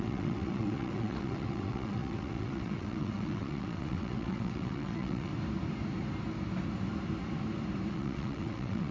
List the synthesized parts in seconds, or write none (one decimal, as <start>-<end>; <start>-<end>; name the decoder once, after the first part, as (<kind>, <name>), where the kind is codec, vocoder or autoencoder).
0.0-5.3 (vocoder, WaveNeXt); 7.9-8.9